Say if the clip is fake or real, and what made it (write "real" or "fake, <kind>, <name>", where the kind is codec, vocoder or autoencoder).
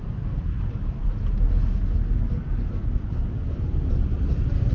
real